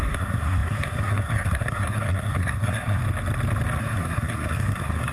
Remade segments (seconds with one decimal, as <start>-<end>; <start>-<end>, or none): 0.0-3.0; 3.8-5.1

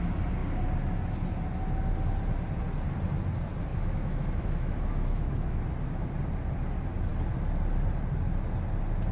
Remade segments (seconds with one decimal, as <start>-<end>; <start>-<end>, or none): 3.7-5.6

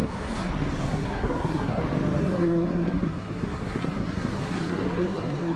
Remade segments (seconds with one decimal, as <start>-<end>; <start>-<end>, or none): 0.0-0.5; 0.9-1.8; 2.2-5.6

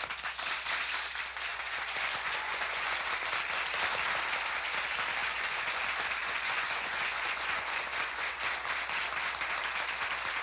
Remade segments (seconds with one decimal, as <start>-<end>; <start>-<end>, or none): 1.5-3.0; 5.2-5.8; 6.2-8.4

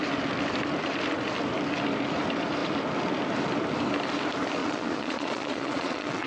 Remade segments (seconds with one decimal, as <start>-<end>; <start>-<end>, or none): 4.6-6.3

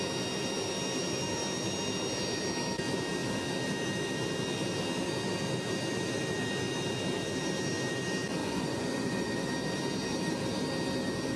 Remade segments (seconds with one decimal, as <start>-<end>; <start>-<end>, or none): 8.4-9.5